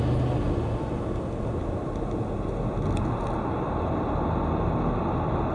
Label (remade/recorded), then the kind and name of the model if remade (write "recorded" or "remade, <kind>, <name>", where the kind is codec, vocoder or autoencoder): recorded